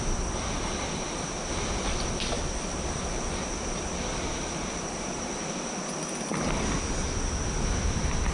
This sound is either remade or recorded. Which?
recorded